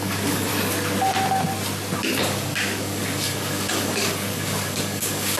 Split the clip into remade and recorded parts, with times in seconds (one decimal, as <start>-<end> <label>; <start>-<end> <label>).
0.0-0.5 remade; 0.5-2.2 recorded; 2.2-5.4 remade